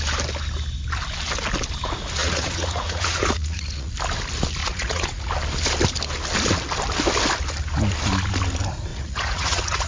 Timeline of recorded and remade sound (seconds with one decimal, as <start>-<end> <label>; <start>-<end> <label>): 0.0-2.2 recorded; 2.2-3.9 remade; 3.9-4.6 recorded; 4.6-5.3 remade; 5.3-8.9 recorded; 8.9-9.9 remade